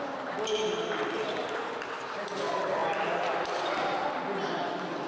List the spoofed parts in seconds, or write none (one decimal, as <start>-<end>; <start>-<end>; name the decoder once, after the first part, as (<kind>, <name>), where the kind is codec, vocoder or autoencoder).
none